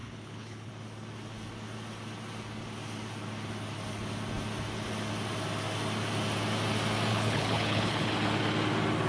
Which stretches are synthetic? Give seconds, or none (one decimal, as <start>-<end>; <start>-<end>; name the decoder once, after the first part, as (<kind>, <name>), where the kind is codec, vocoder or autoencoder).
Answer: 0.0-0.7 (codec, HILCodec); 7.1-8.1